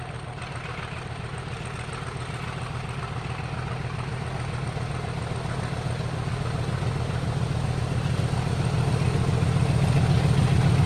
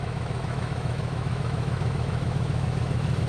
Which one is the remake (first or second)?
second